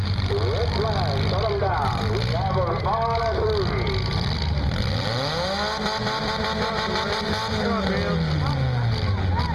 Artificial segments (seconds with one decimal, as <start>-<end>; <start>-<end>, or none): none